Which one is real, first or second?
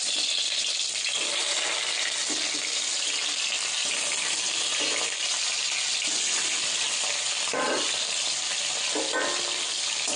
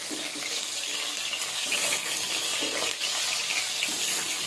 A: first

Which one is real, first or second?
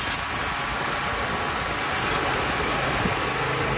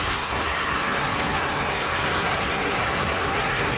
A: first